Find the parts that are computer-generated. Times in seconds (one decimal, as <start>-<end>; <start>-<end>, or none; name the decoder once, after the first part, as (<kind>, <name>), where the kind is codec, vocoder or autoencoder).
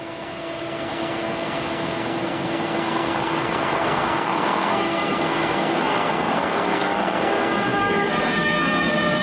0.0-9.2 (codec, SNAC)